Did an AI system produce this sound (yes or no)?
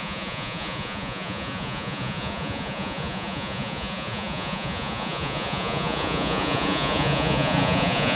yes